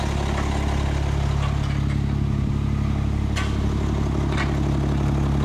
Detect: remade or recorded recorded